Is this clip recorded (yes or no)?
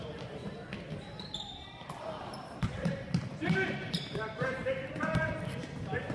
no